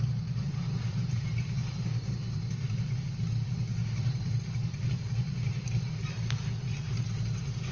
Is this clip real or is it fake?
fake